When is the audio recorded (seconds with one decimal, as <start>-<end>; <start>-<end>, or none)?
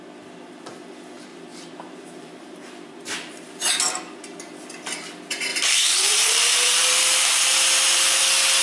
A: 0.0-1.3; 4.2-5.5; 8.2-8.6